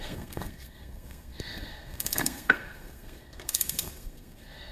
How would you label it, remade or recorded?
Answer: remade